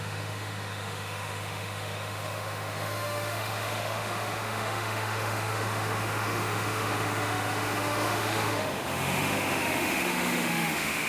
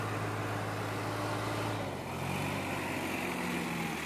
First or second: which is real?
second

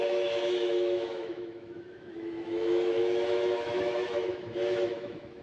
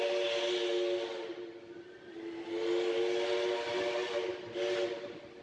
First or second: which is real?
second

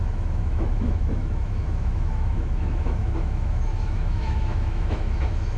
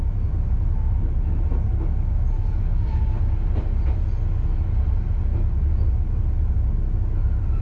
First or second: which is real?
second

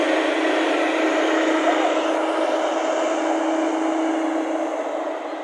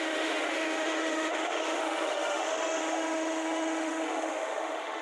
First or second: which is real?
first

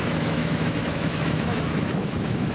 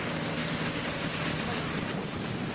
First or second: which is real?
second